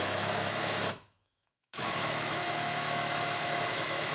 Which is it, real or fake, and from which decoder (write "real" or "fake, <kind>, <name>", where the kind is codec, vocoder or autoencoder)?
fake, autoencoder, DAC-VAE